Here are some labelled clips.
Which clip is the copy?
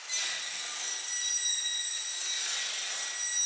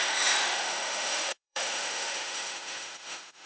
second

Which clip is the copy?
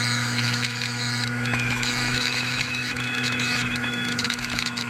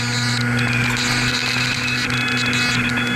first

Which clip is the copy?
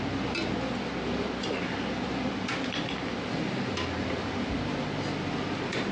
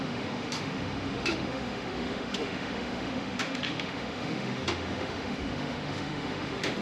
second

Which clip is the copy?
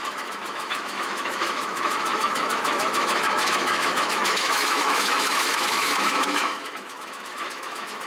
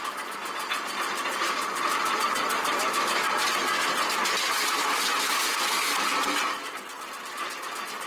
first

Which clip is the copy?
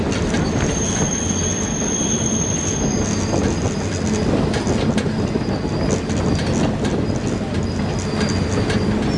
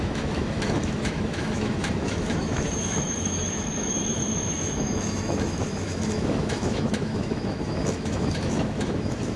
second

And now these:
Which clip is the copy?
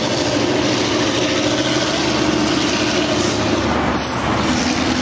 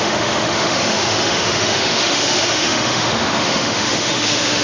second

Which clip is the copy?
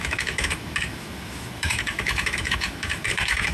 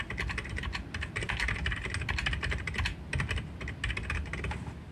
first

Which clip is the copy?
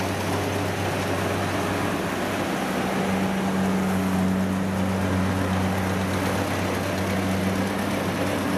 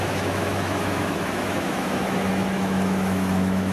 second